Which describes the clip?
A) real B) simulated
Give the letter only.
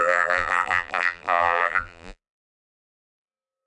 B